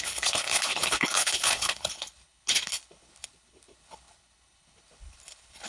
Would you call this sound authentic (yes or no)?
no